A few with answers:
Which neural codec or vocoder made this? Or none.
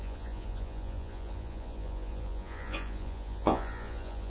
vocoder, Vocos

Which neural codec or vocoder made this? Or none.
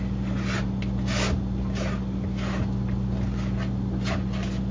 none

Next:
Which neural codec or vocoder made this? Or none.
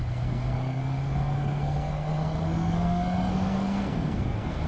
codec, SNAC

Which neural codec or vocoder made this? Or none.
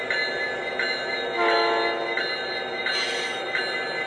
none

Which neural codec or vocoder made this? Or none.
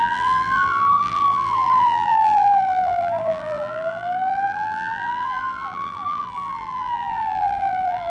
vocoder, BigVGAN v2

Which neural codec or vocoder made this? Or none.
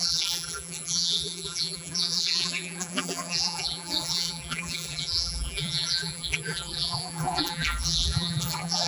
vocoder, BigVGAN v2